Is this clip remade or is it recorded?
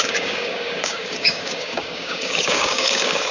remade